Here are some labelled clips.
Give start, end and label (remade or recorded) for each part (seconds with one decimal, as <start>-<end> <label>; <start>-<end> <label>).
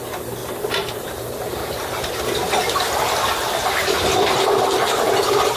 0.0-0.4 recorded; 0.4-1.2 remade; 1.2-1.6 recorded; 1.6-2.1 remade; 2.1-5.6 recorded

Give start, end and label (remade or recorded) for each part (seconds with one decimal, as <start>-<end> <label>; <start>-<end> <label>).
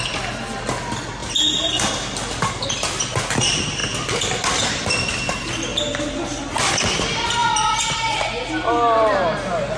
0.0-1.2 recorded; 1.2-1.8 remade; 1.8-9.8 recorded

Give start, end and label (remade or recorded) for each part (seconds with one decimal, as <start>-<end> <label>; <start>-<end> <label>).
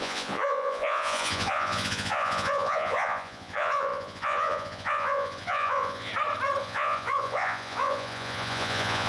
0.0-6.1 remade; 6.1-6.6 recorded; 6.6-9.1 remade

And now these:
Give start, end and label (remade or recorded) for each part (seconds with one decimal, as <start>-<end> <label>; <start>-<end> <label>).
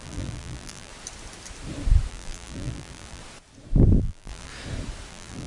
0.0-0.9 remade; 0.9-2.1 recorded; 2.1-3.2 remade; 3.2-4.0 recorded; 4.0-4.5 remade; 4.5-5.1 recorded; 5.1-5.5 remade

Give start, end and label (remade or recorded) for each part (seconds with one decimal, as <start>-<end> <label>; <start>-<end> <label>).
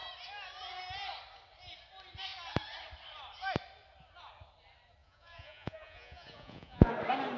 0.0-5.0 recorded; 5.0-6.9 remade; 6.9-7.4 recorded